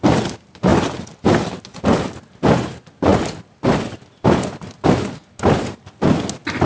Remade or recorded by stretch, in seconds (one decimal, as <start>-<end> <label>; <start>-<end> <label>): 0.0-6.7 recorded